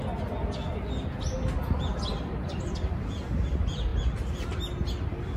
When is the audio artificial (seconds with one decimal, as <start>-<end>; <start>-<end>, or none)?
none